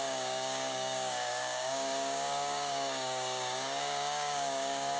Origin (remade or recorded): remade